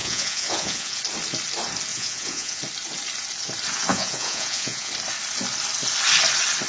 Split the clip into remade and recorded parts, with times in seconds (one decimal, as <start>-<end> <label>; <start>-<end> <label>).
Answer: 0.0-1.0 remade; 1.0-1.9 recorded; 1.9-2.6 remade; 2.6-3.9 recorded; 3.9-4.9 remade; 4.9-6.7 recorded